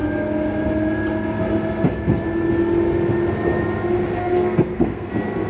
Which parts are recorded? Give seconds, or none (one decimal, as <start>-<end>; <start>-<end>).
0.0-4.2; 5.1-5.5